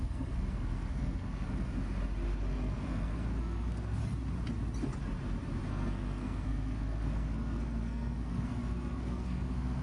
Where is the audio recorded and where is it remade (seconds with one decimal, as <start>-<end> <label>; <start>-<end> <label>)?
0.0-1.7 remade; 1.7-2.5 recorded; 2.5-4.0 remade; 4.0-5.7 recorded; 5.7-9.8 remade